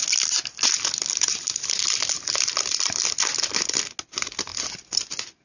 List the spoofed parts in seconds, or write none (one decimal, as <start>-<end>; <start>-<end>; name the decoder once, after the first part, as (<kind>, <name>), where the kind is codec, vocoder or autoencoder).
none